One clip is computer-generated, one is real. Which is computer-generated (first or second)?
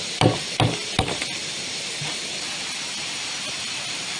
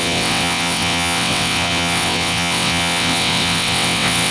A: second